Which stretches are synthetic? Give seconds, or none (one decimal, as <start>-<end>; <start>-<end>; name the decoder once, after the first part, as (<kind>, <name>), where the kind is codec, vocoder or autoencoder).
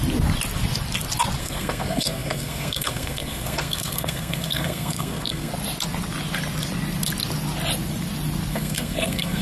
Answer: 1.4-5.5 (codec, SNAC); 8.5-9.4